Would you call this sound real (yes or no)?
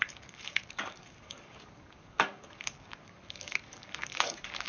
no